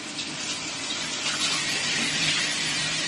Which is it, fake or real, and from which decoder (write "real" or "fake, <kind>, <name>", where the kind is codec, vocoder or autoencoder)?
fake, vocoder, Vocos